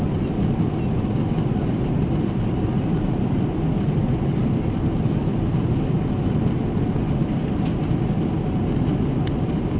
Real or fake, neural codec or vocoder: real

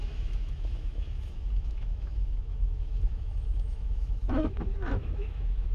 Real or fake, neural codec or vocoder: fake, autoencoder, DAC-VAE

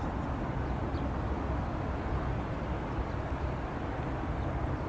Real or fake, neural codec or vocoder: real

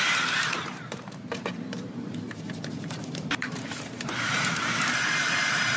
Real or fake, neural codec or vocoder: fake, vocoder, BigVGAN v2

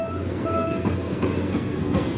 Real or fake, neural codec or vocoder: fake, codec, SNAC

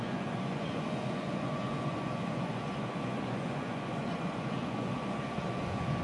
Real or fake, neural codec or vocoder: fake, vocoder, Vocos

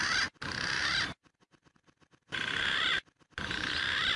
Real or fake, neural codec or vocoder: real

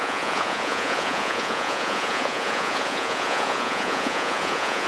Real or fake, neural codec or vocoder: fake, vocoder, Vocos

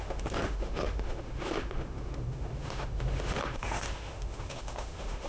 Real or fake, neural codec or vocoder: fake, autoencoder, DAC-VAE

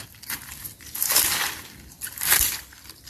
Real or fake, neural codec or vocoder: fake, vocoder, BigVGAN v2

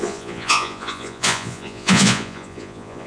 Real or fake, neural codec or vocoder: fake, vocoder, Vocos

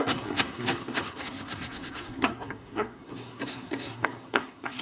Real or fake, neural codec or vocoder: fake, codec, SNAC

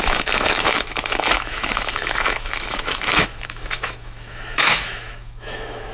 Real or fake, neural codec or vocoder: fake, autoencoder, DAC-VAE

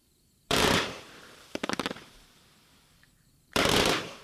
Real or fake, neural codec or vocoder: fake, vocoder, BigVGAN v2